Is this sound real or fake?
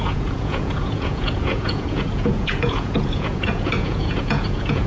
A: fake